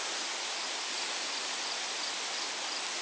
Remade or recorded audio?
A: recorded